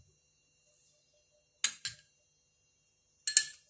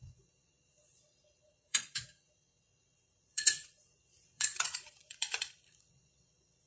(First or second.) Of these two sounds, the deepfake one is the second